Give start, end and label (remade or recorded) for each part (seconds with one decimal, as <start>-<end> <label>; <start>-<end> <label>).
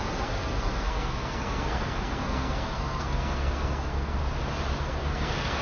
0.0-4.2 remade; 4.2-4.8 recorded; 4.8-5.6 remade